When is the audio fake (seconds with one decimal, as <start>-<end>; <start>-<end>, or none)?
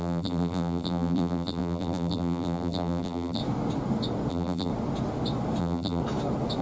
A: 0.0-3.4; 4.3-4.7; 5.6-6.0